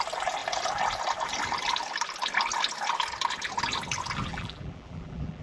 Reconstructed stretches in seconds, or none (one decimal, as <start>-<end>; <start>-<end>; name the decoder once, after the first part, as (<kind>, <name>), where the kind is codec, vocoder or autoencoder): 4.3-5.4 (vocoder, BigVGAN v2)